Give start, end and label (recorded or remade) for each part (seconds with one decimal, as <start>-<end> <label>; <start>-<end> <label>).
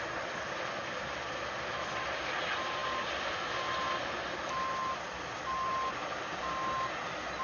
0.0-7.4 recorded